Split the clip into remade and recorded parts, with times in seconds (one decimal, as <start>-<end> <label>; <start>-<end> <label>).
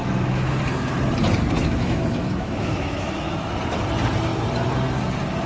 0.0-0.6 remade; 0.6-1.6 recorded; 1.6-3.5 remade; 3.5-5.5 recorded